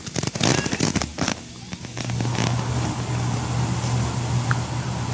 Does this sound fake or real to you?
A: real